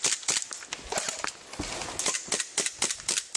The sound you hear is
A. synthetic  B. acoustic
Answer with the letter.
B